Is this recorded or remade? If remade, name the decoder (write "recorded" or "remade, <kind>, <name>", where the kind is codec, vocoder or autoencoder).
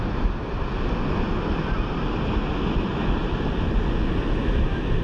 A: recorded